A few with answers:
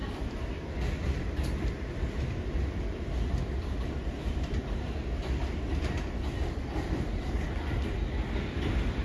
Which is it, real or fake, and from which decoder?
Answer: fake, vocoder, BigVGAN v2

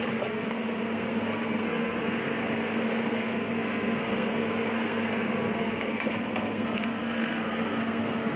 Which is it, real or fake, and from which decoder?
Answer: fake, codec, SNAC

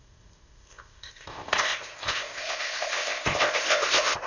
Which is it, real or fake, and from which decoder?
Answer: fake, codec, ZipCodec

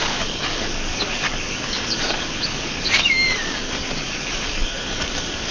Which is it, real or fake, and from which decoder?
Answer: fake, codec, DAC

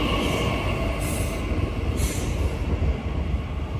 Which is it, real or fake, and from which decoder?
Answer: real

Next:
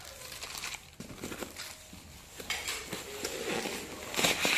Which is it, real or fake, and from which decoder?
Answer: real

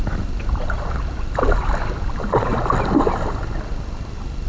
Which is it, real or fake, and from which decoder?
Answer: real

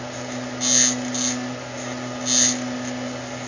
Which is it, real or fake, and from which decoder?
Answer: real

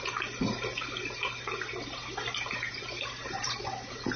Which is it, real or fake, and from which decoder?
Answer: real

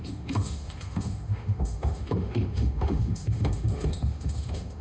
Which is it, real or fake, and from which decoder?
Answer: fake, autoencoder, DAC-VAE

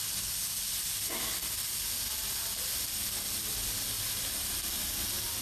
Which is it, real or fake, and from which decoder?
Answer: real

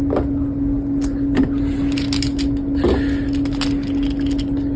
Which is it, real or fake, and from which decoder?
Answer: real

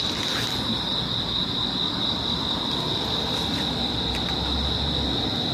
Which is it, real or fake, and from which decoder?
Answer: real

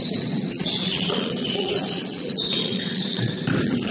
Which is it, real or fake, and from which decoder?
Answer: fake, vocoder, Vocos